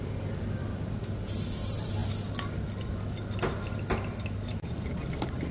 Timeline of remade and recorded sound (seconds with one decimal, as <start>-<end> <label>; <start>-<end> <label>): 0.0-2.0 remade; 2.0-5.5 recorded